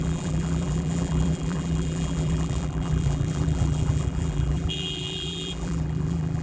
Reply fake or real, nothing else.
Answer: fake